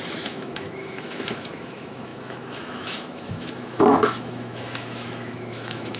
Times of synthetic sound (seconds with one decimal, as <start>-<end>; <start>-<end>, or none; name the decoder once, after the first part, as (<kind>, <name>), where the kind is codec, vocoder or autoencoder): 0.0-6.0 (autoencoder, DAC-VAE)